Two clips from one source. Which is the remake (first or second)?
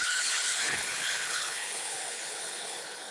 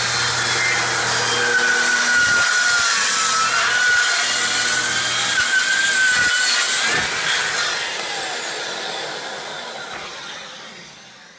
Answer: first